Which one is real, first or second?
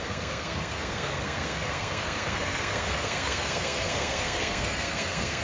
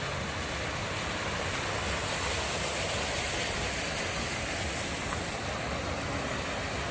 second